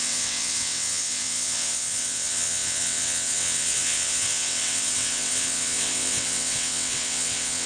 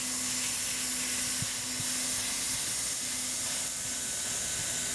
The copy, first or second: first